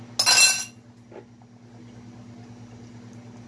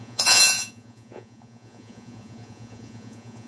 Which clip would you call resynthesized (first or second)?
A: second